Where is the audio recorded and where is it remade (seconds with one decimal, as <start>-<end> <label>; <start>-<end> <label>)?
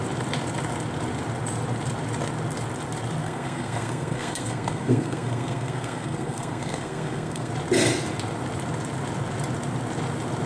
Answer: 0.0-3.2 recorded; 3.2-7.5 remade; 7.5-10.5 recorded